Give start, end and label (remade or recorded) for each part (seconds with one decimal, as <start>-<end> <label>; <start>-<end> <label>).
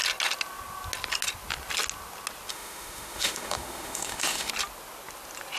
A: 0.0-2.5 recorded; 2.5-4.5 remade; 4.5-5.6 recorded